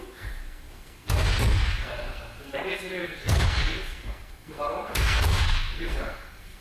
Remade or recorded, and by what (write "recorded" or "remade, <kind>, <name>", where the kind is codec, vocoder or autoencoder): remade, codec, SNAC